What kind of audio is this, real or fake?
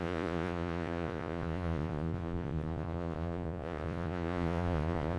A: fake